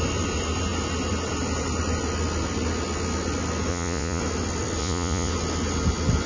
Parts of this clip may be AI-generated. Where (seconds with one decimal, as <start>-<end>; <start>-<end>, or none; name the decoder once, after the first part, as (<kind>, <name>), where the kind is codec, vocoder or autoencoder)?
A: 3.7-4.2 (vocoder, Vocos); 4.8-5.3